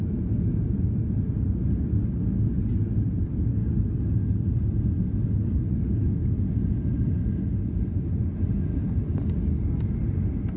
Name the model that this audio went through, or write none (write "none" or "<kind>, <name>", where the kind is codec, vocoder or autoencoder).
none